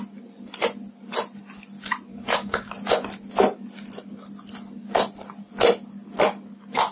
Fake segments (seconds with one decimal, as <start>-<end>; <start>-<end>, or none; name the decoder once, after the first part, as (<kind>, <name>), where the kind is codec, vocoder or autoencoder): 2.1-2.7 (codec, DAC)